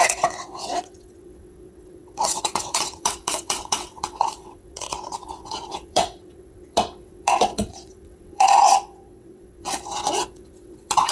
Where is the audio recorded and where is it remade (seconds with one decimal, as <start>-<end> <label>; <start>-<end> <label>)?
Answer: 0.0-11.1 remade